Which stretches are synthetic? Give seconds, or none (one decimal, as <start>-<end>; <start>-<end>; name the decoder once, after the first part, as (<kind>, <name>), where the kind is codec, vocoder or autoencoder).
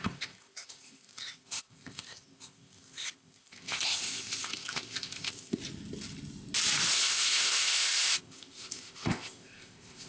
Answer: 0.0-5.6 (codec, ZipCodec); 6.9-10.1